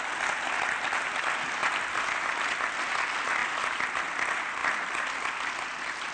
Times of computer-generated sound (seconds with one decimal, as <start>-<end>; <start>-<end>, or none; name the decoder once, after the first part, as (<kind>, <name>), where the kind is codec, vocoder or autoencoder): none